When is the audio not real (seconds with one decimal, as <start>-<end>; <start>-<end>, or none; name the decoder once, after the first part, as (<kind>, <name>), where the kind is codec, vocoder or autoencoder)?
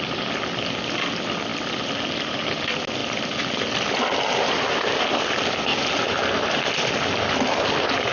none